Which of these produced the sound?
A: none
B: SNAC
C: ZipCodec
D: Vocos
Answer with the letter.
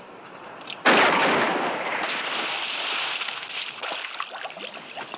A